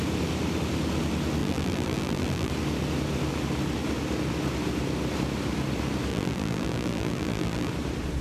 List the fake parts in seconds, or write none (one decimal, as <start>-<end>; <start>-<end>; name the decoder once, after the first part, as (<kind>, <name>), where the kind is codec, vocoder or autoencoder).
1.4-2.5 (vocoder, BigVGAN v2); 6.1-7.7